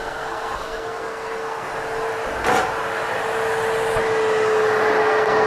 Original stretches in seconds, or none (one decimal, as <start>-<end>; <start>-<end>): 1.7-5.0